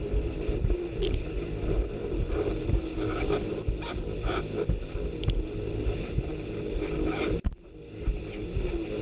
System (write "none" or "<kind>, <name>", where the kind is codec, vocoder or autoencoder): none